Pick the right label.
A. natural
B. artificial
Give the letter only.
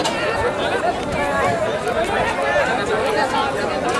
A